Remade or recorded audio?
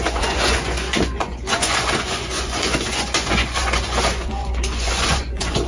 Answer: remade